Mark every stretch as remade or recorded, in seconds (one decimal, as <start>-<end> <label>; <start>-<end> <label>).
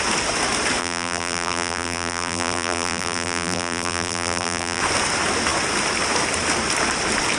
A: 0.0-0.8 recorded; 0.8-4.8 remade; 4.8-7.4 recorded